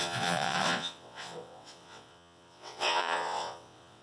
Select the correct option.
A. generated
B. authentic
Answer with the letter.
A